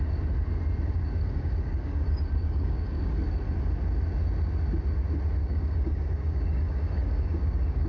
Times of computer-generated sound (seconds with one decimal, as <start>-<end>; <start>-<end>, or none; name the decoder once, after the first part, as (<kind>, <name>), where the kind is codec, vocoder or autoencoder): 1.2-3.3 (codec, DAC); 5.4-7.9